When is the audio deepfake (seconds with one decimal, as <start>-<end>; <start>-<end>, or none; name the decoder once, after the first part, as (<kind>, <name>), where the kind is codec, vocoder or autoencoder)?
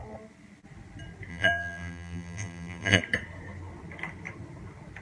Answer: 1.3-3.0 (vocoder, BigVGAN v2)